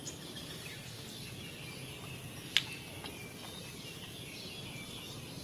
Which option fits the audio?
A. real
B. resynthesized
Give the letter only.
A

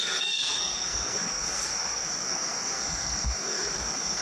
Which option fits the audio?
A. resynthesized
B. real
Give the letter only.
A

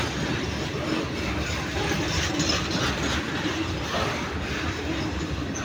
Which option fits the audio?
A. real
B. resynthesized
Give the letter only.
A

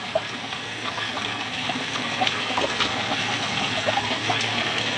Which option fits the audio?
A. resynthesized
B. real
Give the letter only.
A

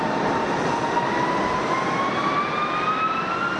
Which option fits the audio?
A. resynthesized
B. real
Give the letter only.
B